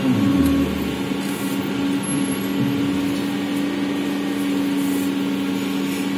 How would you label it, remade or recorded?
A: recorded